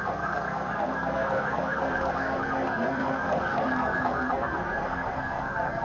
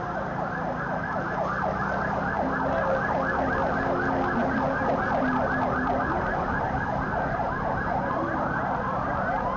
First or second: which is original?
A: second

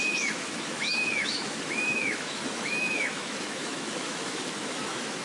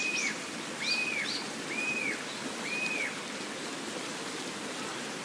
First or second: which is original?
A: second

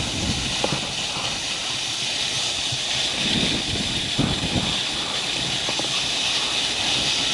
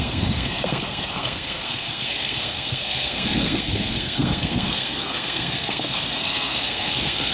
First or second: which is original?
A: first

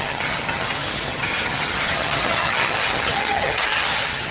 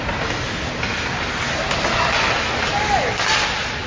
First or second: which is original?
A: second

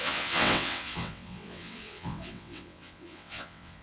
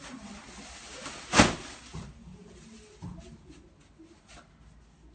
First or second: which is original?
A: second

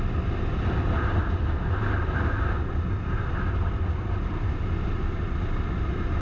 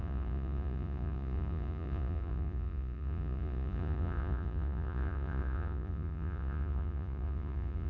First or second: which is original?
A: first